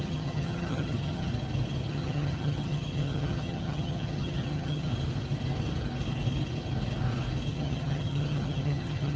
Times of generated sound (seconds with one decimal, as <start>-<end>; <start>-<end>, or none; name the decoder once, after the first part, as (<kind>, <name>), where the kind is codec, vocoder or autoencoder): 0.0-1.3 (vocoder, HiFi-GAN); 1.9-4.9; 7.5-9.2